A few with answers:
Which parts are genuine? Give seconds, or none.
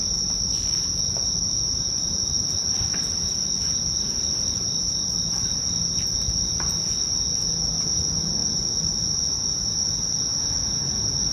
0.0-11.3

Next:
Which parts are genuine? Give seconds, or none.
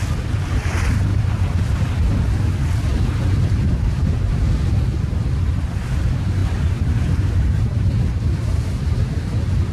0.0-1.1; 1.8-2.9; 4.4-6.4; 8.2-9.7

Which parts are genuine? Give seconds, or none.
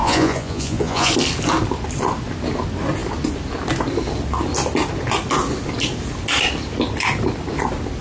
1.1-8.0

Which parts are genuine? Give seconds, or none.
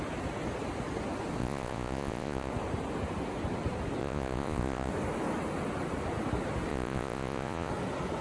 0.0-1.4; 2.5-4.0; 4.9-6.7; 7.7-8.2